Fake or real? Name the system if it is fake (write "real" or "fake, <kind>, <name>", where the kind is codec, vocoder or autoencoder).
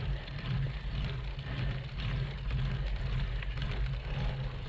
real